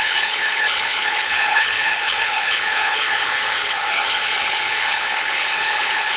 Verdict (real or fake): fake